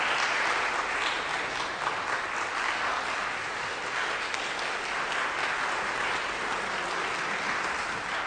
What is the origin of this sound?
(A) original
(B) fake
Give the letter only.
A